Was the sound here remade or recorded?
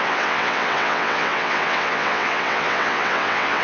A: remade